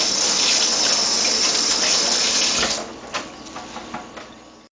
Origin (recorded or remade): recorded